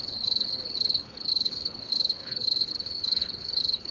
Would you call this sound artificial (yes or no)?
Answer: yes